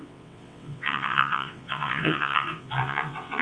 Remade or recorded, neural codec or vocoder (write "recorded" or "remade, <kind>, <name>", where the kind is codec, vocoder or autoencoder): remade, vocoder, WaveNeXt